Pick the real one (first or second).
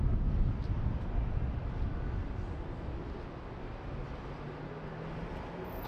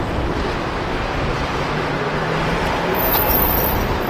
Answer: first